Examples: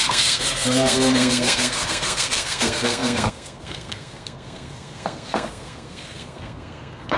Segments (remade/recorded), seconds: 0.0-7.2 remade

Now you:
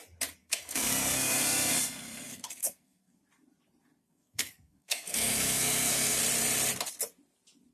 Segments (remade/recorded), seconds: 0.0-0.4 recorded; 0.4-3.2 remade; 3.2-4.0 recorded; 4.0-6.2 remade; 6.2-7.7 recorded

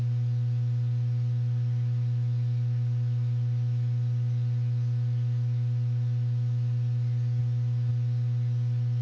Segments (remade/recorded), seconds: 0.0-9.0 recorded

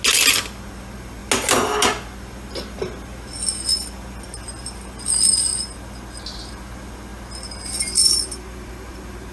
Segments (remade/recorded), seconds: 0.0-9.3 recorded

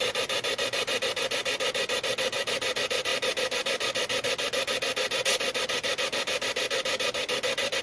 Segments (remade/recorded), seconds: 0.0-7.8 recorded

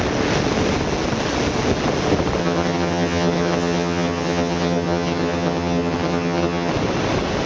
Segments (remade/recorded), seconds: 0.0-2.4 recorded; 2.4-6.7 remade; 6.7-7.5 recorded

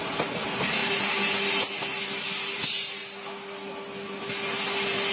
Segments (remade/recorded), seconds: 0.0-5.1 recorded

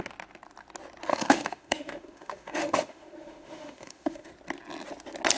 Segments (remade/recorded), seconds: 0.0-1.1 recorded; 1.1-4.3 remade; 4.3-5.4 recorded